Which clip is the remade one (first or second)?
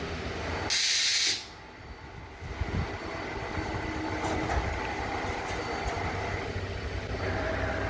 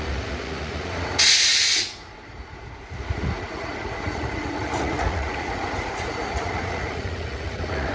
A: second